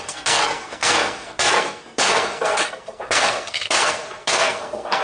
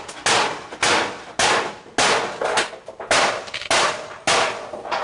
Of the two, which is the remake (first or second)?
first